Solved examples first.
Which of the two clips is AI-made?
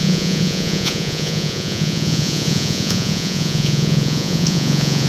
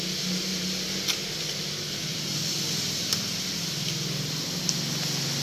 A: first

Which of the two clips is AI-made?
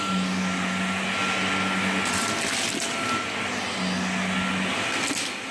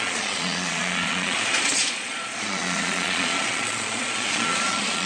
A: second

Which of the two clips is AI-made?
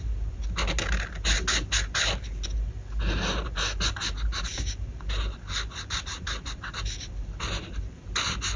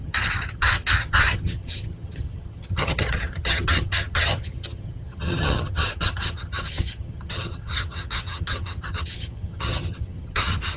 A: second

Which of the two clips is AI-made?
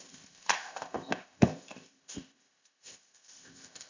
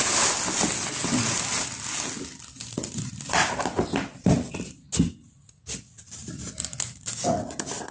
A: first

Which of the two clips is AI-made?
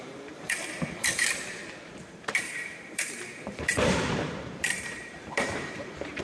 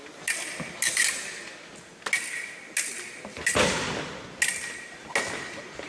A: first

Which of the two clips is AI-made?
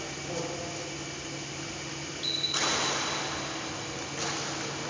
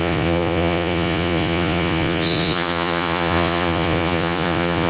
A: second